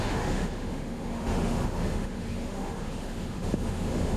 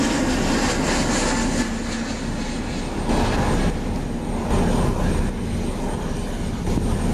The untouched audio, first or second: second